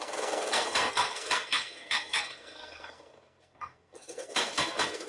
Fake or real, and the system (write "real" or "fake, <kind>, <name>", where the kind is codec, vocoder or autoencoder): fake, codec, SNAC